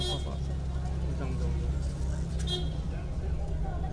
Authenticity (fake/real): real